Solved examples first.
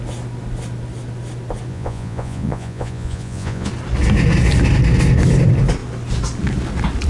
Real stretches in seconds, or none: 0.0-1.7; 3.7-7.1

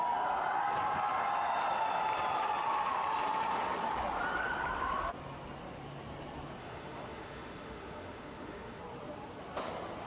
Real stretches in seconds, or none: 0.0-6.6; 8.8-10.1

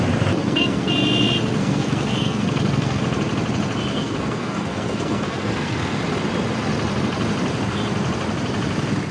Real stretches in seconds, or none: 0.0-0.4; 0.9-1.6; 3.0-3.9; 6.0-9.1